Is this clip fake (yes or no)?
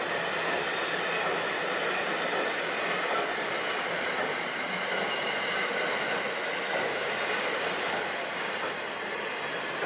no